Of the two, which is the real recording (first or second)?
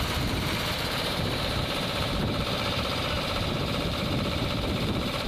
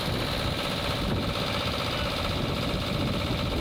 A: second